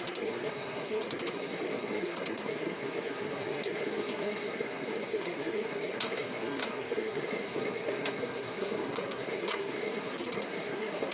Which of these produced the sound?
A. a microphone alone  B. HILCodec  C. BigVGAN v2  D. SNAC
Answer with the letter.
D